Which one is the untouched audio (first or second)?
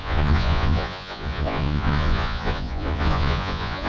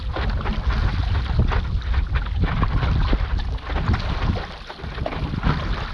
second